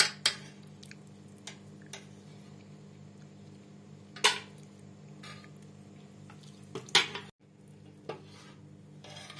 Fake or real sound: real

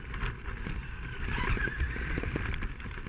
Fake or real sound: real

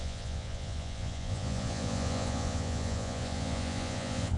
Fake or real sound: fake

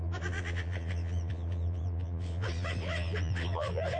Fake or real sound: fake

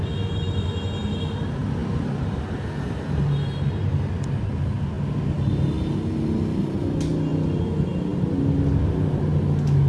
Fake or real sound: real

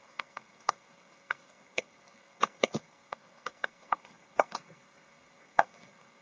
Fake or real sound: fake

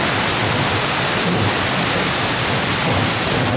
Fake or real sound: real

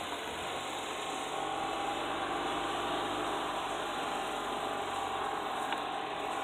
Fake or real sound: real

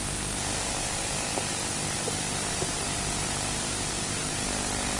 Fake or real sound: fake